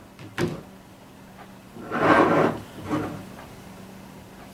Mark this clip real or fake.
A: real